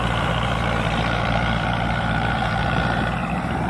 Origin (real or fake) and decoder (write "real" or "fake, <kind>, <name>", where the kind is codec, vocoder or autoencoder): fake, vocoder, BigVGAN v2